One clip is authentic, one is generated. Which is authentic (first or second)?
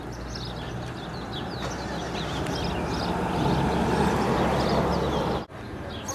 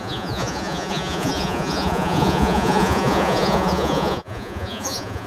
first